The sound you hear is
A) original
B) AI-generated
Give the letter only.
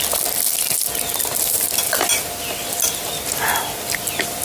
A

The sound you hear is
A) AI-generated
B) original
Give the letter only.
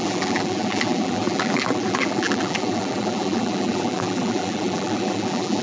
A